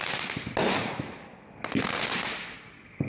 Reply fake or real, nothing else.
real